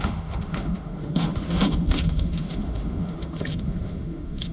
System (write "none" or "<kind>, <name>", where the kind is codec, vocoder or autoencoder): autoencoder, DAC-VAE